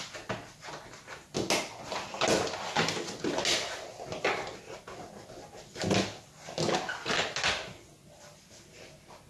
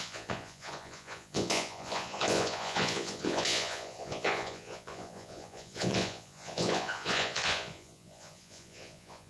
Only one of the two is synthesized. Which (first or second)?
second